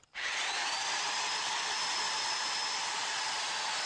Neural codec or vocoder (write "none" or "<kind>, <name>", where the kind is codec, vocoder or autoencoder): vocoder, BigVGAN v2